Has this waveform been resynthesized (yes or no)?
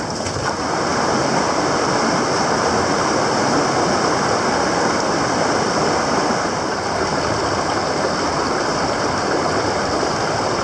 yes